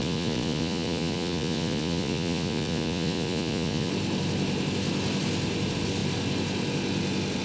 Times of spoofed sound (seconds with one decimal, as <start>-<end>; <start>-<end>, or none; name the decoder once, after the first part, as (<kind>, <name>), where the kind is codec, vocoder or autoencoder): 0.0-3.9 (vocoder, Vocos)